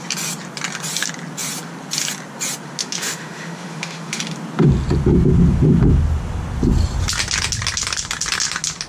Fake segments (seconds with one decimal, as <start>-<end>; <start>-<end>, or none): 2.8-4.2